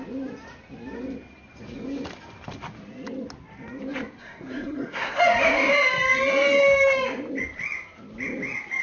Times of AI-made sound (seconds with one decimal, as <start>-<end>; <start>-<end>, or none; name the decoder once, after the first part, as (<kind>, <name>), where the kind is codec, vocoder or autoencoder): 4.2-5.2 (codec, SNAC)